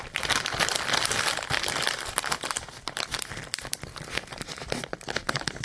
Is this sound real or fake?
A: real